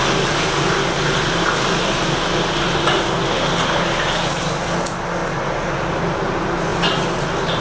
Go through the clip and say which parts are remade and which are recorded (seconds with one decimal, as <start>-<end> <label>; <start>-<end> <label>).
0.0-7.6 recorded